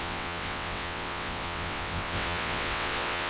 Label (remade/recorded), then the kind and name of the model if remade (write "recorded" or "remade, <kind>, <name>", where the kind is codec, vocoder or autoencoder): remade, vocoder, WaveNeXt